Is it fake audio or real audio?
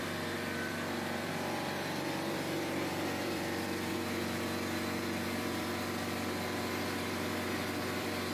fake